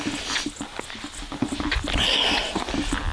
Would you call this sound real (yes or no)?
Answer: yes